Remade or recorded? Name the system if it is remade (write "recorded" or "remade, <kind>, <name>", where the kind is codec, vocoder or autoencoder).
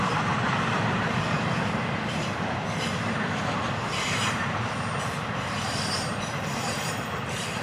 remade, vocoder, BigVGAN v2